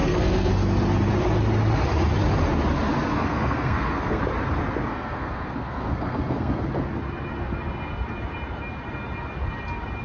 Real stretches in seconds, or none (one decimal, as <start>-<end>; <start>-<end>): 0.5-3.1; 4.2-4.9; 6.6-10.0